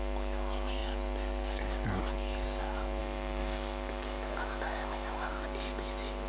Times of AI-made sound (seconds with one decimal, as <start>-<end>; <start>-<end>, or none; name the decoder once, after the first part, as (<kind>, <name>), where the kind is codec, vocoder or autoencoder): 3.0-5.3 (autoencoder, DAC-VAE)